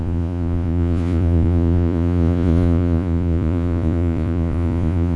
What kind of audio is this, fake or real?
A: fake